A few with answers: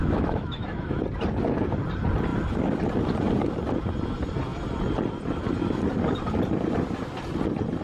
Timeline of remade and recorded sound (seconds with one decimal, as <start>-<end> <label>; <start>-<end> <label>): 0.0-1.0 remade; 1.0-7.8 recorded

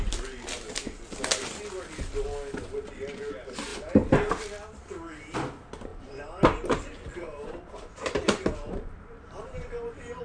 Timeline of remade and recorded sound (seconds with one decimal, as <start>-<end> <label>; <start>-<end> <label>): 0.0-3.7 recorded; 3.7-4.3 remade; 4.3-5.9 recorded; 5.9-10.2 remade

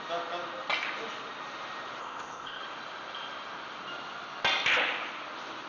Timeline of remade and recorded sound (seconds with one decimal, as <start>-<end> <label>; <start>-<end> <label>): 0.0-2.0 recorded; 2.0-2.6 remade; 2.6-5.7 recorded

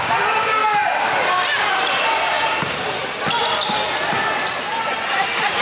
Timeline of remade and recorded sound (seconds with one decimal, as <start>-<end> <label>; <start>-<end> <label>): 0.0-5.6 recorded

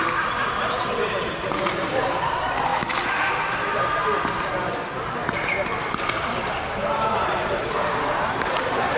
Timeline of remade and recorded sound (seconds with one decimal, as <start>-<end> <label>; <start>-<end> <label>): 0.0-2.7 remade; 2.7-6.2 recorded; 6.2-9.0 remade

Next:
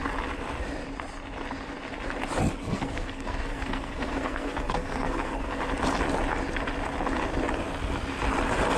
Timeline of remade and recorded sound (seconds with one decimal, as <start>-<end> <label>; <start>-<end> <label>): 0.0-2.6 recorded; 2.6-5.6 remade; 5.6-8.8 recorded